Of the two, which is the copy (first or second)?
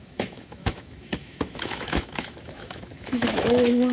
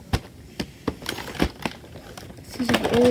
first